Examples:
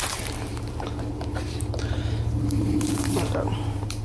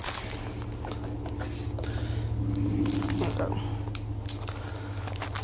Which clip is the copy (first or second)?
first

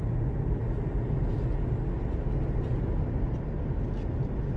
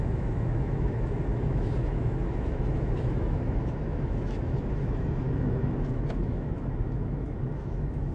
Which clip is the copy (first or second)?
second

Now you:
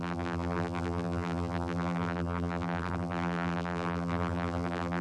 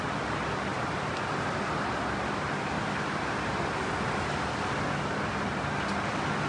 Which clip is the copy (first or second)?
first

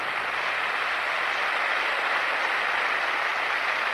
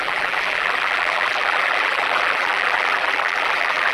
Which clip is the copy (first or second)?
second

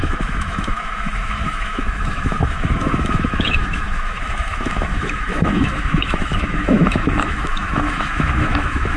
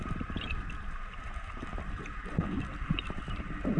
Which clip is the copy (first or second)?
first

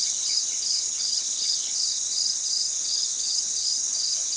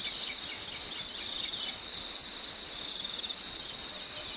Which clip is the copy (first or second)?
first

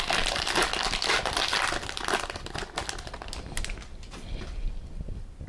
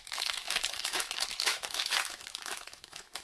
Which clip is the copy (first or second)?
second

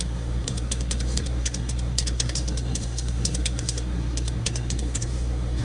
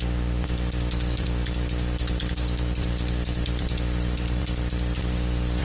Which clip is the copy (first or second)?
first